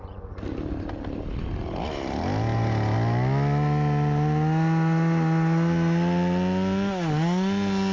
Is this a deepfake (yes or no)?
no